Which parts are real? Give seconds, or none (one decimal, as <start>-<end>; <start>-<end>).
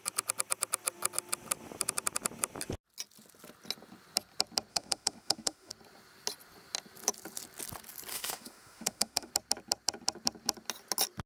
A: 0.0-4.7; 5.7-8.1; 9.3-11.3